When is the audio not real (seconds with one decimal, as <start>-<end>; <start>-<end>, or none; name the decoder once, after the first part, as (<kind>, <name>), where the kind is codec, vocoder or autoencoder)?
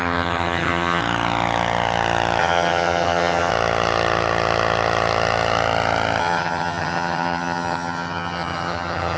0.0-1.0 (vocoder, HiFi-GAN); 2.4-3.5; 6.2-9.2